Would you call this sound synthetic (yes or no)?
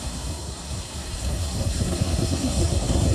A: yes